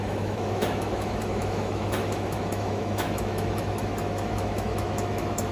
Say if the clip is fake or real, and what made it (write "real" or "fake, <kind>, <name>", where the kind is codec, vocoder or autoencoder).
fake, autoencoder, DAC-VAE